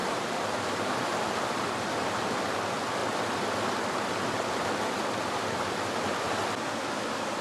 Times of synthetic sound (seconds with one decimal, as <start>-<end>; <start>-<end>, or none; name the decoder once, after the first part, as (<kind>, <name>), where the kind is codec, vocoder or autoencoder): 0.0-2.3 (vocoder, BigVGAN v2)